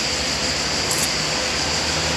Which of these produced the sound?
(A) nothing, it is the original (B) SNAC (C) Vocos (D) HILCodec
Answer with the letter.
A